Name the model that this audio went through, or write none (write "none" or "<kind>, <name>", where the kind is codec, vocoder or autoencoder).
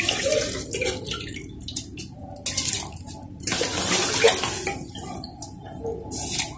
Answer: none